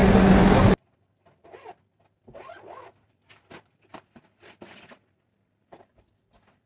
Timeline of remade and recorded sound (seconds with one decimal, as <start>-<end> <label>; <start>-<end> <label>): 0.0-6.7 recorded